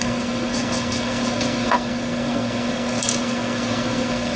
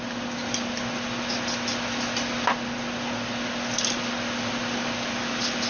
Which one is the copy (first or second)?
first